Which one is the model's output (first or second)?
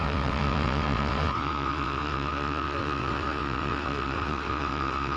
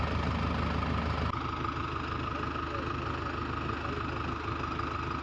first